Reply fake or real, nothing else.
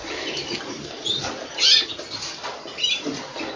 real